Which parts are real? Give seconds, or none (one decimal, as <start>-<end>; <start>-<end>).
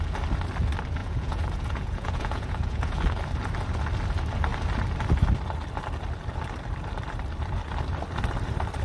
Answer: 0.0-1.0; 3.0-8.8